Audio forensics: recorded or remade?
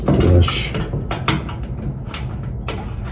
recorded